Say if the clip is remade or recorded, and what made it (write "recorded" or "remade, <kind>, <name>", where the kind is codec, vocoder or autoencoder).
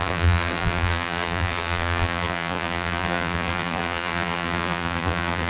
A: remade, vocoder, BigVGAN v2